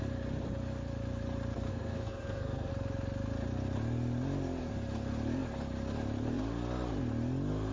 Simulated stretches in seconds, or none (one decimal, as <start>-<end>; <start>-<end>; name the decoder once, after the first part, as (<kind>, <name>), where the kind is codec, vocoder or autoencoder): 1.7-2.7 (codec, SNAC)